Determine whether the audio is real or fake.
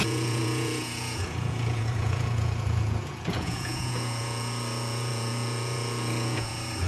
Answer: fake